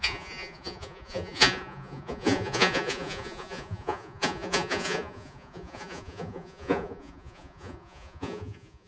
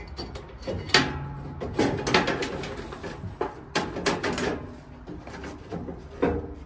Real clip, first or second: second